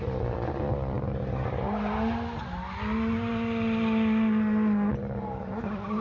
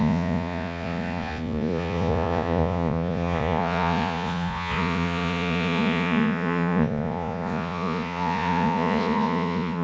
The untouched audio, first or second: first